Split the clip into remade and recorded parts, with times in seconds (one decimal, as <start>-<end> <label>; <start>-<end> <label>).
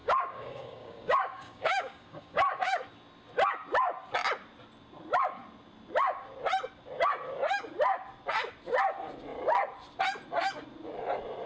0.0-2.8 remade; 2.8-11.5 recorded